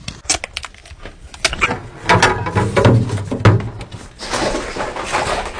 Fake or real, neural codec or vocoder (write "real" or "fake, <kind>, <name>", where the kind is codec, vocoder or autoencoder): real